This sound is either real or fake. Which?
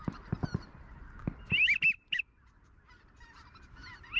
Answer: real